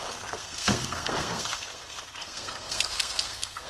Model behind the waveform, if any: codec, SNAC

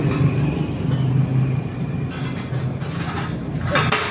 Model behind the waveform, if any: none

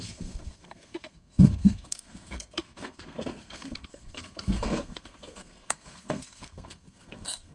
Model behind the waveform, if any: codec, SNAC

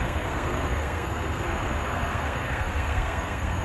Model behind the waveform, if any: codec, SNAC